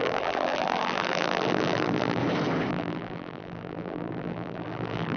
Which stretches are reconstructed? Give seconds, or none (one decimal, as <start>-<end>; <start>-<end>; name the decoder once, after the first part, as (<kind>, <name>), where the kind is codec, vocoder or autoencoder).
0.0-2.2 (vocoder, BigVGAN v2); 2.7-5.2